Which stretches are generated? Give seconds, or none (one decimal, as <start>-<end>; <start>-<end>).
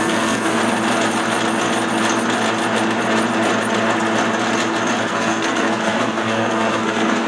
0.0-0.6; 5.0-7.3